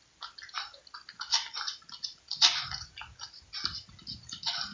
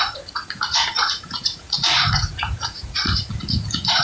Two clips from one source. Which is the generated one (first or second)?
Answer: second